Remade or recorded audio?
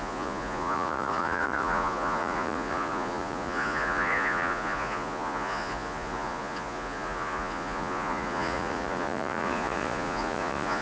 remade